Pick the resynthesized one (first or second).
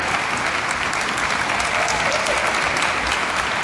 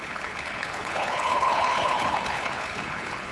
second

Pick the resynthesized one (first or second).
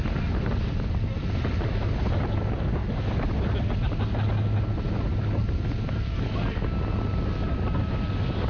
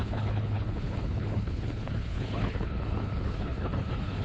second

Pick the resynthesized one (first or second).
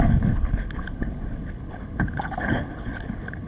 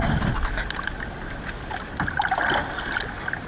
first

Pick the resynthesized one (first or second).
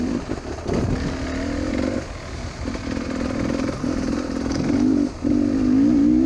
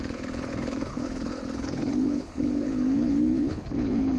second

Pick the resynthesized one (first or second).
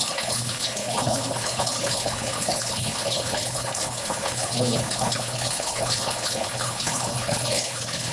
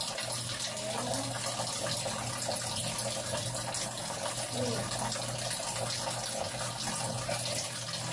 first